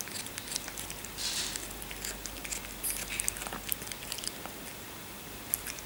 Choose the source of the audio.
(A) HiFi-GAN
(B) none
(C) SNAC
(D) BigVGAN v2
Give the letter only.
B